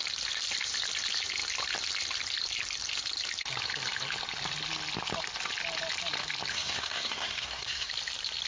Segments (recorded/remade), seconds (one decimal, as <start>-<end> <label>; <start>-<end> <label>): 0.0-6.5 recorded; 6.5-7.9 remade; 7.9-8.5 recorded

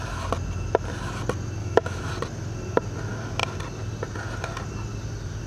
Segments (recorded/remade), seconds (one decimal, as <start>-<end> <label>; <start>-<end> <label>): 0.0-1.6 recorded; 1.6-2.1 remade; 2.1-5.5 recorded

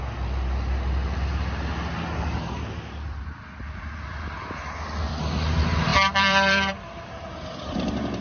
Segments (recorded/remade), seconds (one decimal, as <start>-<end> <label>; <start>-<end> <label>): 0.0-5.9 recorded; 5.9-7.1 remade; 7.1-8.2 recorded

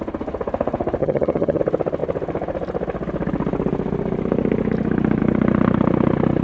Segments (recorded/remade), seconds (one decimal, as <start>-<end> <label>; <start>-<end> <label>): 0.0-1.0 recorded; 1.0-1.6 remade; 1.6-6.4 recorded

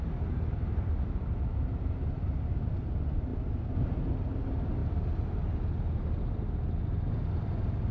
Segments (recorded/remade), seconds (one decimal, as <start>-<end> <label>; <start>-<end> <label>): 0.0-7.9 recorded

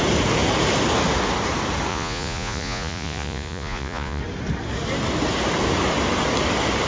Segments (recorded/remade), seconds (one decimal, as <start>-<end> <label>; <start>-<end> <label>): 0.0-1.9 recorded; 1.9-4.2 remade; 4.2-6.9 recorded